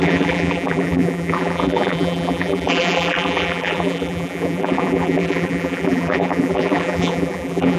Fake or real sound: fake